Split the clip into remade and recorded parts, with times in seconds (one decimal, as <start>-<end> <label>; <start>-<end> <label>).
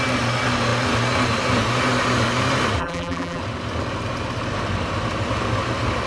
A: 0.0-2.8 recorded; 2.8-3.4 remade; 3.4-6.1 recorded